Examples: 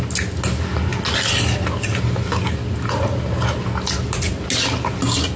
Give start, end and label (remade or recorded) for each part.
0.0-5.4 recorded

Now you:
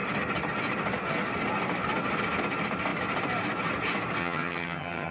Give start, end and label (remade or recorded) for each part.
0.0-4.2 recorded; 4.2-5.1 remade

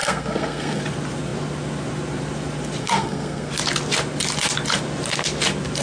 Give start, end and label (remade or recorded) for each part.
0.0-0.8 remade; 0.8-2.8 recorded; 2.8-3.5 remade; 3.5-5.8 recorded